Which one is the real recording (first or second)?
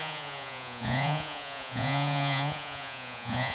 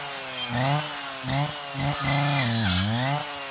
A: second